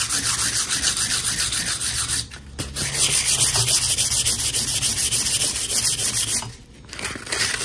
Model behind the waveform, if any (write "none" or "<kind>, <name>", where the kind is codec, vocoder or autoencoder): none